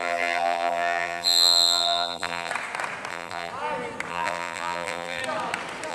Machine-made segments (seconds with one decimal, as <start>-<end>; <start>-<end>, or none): 0.0-2.5; 3.1-3.5; 4.1-5.2